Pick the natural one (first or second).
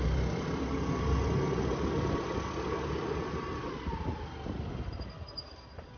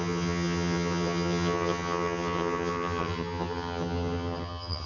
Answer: first